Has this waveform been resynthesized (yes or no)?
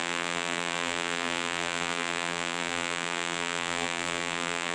yes